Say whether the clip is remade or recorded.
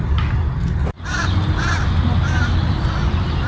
recorded